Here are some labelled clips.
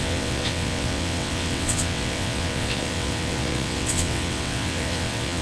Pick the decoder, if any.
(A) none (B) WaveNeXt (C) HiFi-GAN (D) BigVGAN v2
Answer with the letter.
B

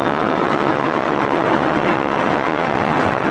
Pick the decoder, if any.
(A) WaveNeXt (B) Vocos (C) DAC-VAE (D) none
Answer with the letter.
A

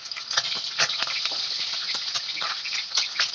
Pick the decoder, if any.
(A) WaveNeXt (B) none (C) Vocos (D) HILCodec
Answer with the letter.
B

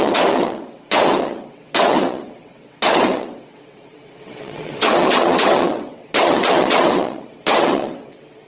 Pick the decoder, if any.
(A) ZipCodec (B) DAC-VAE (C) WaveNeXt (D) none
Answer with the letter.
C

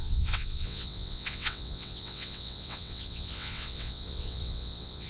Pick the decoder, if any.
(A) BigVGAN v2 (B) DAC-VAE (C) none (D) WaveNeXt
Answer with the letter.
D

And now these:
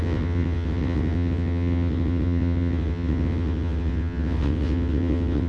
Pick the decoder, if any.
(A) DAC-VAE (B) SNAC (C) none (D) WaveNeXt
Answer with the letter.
D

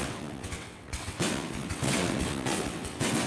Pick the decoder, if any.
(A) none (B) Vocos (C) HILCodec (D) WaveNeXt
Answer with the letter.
D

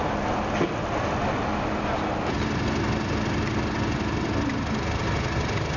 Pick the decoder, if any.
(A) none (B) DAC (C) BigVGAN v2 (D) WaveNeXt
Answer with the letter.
A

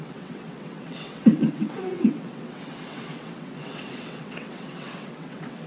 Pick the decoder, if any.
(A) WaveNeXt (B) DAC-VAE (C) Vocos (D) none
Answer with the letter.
A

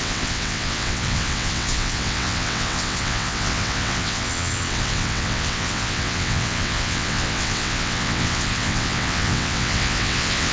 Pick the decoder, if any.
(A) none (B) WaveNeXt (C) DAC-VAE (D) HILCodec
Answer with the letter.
B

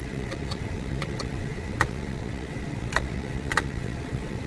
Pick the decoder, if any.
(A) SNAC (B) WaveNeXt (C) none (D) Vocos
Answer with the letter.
B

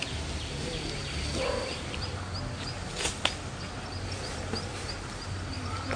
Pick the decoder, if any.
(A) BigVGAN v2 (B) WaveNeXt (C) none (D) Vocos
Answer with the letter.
C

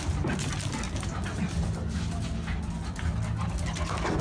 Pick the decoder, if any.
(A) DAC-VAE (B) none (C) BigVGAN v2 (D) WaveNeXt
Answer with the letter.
B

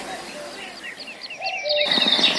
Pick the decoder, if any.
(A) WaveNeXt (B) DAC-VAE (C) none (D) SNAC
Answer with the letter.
C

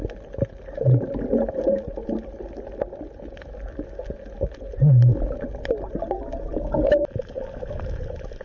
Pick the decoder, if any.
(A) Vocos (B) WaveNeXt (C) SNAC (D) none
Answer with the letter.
D